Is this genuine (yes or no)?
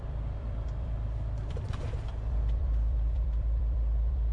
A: no